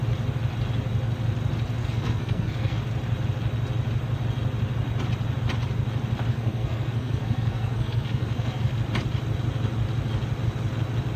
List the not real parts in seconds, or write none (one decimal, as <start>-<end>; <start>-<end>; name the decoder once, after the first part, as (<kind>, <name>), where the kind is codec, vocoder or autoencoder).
1.8-2.8 (codec, SNAC); 6.3-8.8